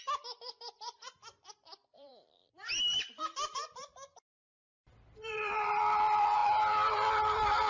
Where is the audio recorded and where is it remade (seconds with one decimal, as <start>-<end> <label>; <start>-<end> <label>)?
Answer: 0.0-7.7 remade